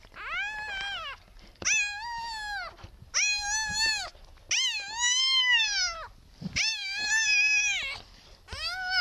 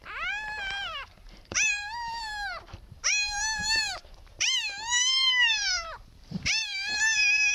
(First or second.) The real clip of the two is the first